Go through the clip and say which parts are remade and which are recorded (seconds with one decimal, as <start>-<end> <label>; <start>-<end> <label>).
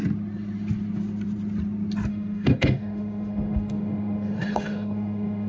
0.0-2.1 recorded; 2.1-5.5 remade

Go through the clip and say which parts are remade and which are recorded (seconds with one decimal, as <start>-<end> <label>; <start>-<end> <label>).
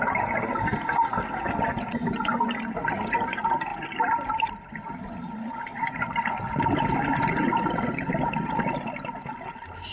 0.0-9.9 recorded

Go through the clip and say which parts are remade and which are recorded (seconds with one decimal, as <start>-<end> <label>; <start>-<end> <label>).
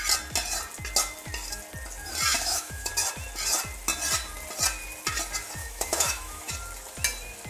0.0-2.3 recorded; 2.3-2.9 remade; 2.9-5.6 recorded; 5.6-6.5 remade; 6.5-7.5 recorded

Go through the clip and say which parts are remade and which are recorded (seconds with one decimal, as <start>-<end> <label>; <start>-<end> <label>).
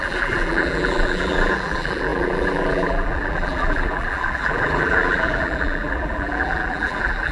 0.0-7.3 remade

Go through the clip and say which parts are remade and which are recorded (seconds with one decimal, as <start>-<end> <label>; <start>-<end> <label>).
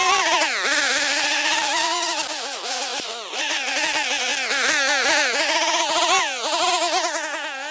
0.0-2.9 recorded; 2.9-3.7 remade; 3.7-7.7 recorded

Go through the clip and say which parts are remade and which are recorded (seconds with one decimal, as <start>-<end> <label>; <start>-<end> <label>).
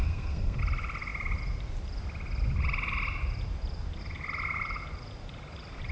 0.0-0.6 remade; 0.6-5.9 recorded